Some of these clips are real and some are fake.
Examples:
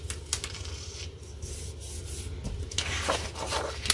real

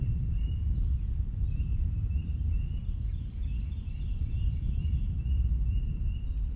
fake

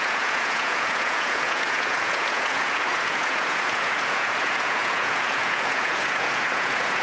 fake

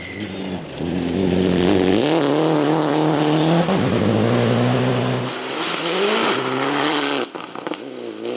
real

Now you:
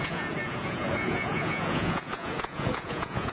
fake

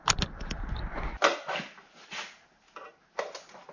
real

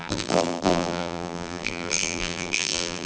fake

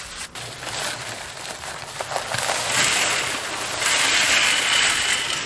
real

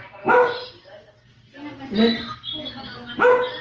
real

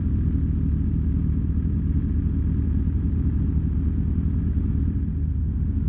real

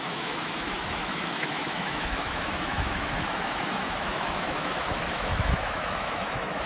fake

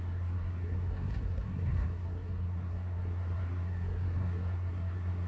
fake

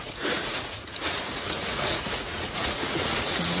fake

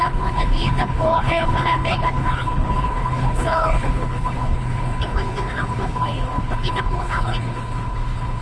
fake